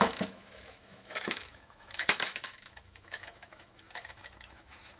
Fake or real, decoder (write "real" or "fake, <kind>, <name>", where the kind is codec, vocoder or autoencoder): fake, autoencoder, DAC-VAE